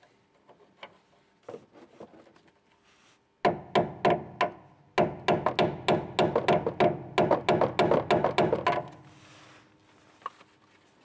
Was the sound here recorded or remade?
recorded